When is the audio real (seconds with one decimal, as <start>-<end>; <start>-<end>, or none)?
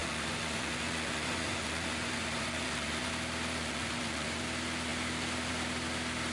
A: 3.1-3.6; 4.4-6.3